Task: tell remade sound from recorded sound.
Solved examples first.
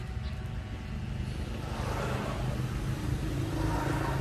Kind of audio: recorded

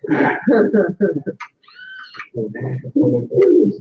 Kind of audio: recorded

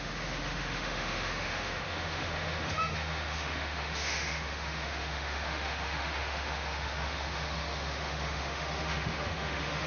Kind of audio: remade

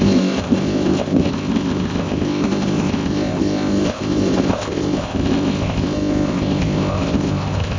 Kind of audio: remade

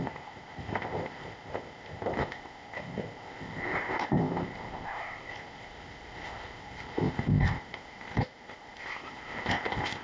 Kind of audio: remade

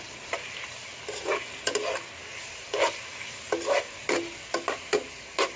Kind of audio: recorded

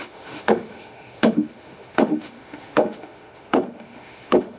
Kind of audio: remade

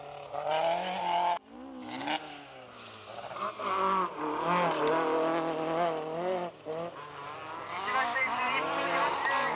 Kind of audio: recorded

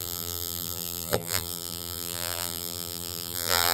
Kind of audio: remade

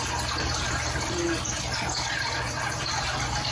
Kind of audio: recorded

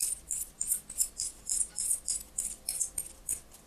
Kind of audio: recorded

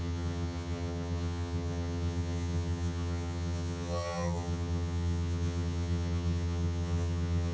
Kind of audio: remade